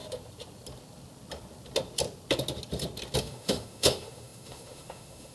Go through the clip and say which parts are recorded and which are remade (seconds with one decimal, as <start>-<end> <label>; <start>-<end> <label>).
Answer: 0.0-3.2 recorded; 3.2-5.3 remade